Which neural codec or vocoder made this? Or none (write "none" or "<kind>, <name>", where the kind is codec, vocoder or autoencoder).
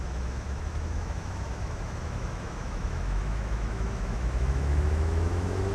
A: autoencoder, DAC-VAE